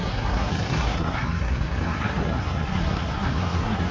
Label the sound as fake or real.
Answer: fake